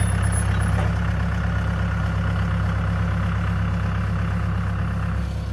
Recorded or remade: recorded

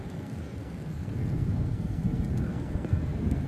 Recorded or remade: remade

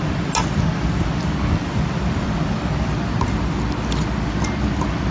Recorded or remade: recorded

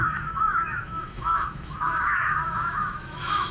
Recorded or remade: remade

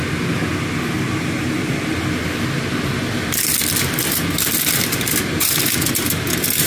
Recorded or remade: recorded